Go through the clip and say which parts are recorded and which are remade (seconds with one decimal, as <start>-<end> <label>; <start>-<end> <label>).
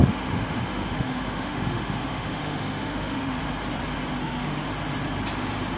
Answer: 0.0-3.4 remade; 3.4-4.2 recorded; 4.2-4.7 remade; 4.7-5.8 recorded